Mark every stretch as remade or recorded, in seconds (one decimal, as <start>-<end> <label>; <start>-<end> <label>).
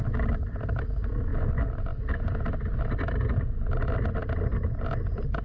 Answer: 0.0-5.4 recorded